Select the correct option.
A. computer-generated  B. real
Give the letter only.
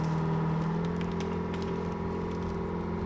B